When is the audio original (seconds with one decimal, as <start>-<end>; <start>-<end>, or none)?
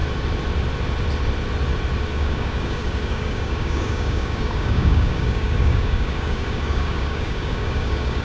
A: 0.0-2.1